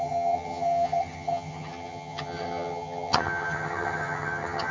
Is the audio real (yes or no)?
no